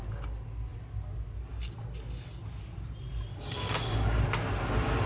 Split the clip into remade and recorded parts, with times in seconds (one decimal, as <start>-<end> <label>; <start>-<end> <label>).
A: 0.0-3.3 recorded; 3.3-4.2 remade; 4.2-5.1 recorded

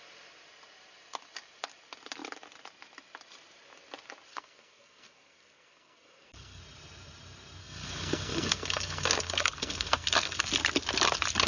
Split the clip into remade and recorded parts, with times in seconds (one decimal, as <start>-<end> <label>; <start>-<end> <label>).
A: 0.0-4.3 recorded; 4.3-6.6 remade; 6.6-7.6 recorded; 7.6-10.5 remade; 10.5-11.5 recorded

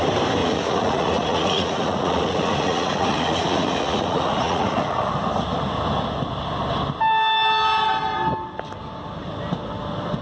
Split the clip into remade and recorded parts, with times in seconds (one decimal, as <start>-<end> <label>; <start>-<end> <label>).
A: 0.0-0.4 recorded; 0.4-5.1 remade; 5.1-10.2 recorded

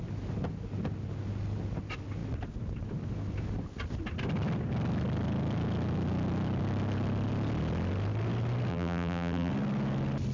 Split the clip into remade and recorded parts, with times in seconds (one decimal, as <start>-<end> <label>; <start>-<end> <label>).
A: 0.0-8.7 recorded; 8.7-9.5 remade; 9.5-10.3 recorded

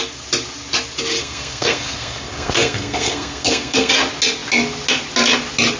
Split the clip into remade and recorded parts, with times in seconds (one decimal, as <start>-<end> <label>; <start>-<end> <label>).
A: 0.0-1.2 recorded; 1.2-3.9 remade; 3.9-5.8 recorded

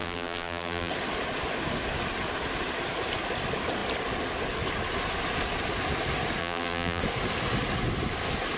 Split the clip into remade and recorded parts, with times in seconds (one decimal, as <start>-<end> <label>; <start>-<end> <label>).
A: 0.0-0.9 remade; 0.9-6.4 recorded; 6.4-7.0 remade; 7.0-8.6 recorded

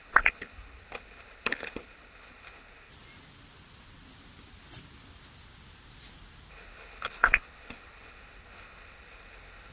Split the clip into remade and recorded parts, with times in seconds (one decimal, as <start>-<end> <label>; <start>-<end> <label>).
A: 0.0-2.9 remade; 2.9-6.5 recorded; 6.5-9.7 remade